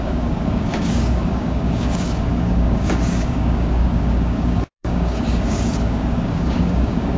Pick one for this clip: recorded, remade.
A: remade